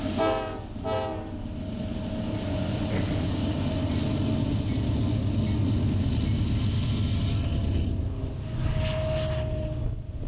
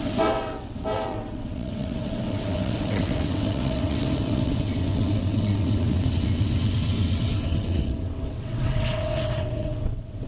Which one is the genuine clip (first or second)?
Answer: first